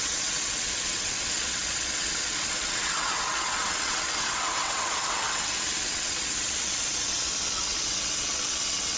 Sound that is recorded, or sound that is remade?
remade